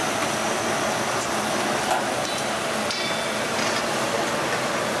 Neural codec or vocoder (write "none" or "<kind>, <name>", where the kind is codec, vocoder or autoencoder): none